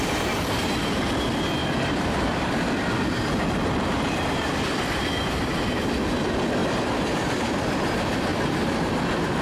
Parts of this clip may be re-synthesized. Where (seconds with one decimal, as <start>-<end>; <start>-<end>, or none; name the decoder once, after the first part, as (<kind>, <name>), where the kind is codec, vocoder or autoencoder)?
1.6-5.3 (vocoder, BigVGAN v2); 6.6-7.8; 8.3-8.9